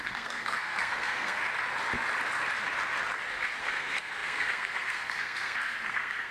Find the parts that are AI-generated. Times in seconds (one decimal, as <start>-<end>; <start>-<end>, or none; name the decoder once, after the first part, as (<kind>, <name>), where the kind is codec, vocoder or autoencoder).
0.0-1.4 (codec, SNAC); 3.6-6.3